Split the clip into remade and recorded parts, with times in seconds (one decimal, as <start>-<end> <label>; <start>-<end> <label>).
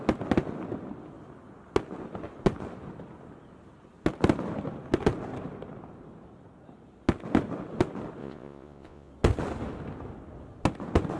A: 0.0-8.2 recorded; 8.2-9.1 remade; 9.1-11.2 recorded